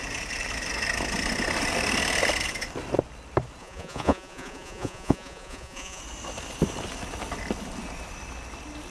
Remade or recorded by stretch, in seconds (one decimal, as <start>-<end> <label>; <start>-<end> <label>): 0.0-3.6 recorded; 3.6-6.0 remade; 6.0-8.9 recorded